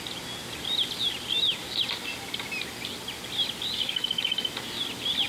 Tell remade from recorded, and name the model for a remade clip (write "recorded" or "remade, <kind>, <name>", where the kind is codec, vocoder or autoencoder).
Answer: recorded